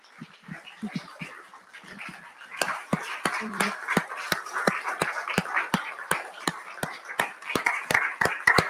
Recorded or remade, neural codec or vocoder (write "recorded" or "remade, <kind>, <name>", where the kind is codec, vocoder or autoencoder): remade, vocoder, BigVGAN v2